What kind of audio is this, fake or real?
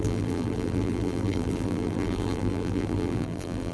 fake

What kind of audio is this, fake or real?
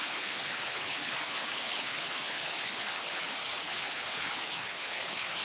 fake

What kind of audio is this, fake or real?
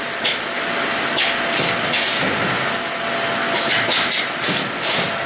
real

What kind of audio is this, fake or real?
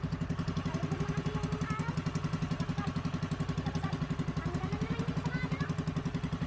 real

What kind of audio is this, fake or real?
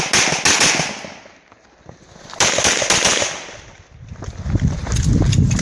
real